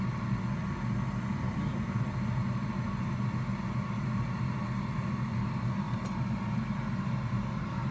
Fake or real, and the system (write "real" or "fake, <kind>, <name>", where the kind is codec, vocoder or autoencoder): real